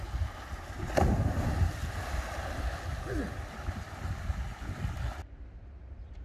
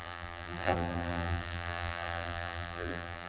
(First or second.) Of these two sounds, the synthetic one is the second